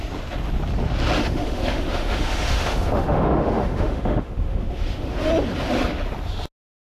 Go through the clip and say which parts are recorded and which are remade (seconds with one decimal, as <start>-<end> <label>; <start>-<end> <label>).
0.0-1.2 recorded; 1.2-5.3 remade; 5.3-6.9 recorded